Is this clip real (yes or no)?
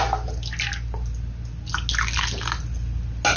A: yes